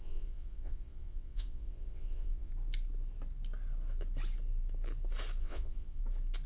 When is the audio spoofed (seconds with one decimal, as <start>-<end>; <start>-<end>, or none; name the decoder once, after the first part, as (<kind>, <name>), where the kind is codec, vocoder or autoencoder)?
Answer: 0.0-2.5 (vocoder, WaveNeXt); 5.4-6.0

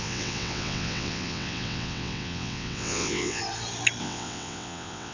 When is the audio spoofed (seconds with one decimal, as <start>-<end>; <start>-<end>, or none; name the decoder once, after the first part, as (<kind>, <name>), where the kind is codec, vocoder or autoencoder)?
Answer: 0.0-3.4 (vocoder, WaveNeXt); 4.0-5.1

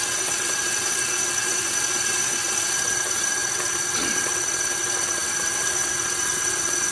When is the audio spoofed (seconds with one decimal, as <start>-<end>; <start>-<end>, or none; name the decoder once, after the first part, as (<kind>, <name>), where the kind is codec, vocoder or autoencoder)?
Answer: 0.0-6.9 (vocoder, WaveNeXt)

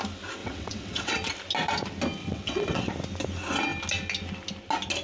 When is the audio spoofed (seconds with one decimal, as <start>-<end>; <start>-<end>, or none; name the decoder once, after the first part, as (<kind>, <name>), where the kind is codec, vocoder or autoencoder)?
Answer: 0.4-1.3 (vocoder, WaveNeXt); 2.2-2.9

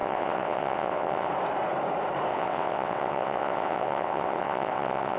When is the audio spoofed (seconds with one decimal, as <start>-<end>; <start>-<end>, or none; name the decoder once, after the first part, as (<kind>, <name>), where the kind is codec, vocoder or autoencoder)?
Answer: 0.0-1.3 (vocoder, WaveNeXt); 2.3-5.2